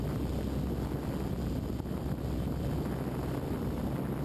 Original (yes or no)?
yes